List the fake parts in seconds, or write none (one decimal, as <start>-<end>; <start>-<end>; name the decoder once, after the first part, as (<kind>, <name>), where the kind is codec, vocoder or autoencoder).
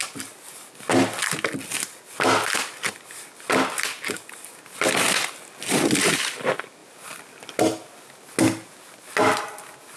none